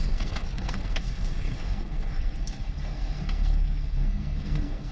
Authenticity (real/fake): fake